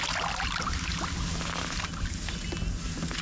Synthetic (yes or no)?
no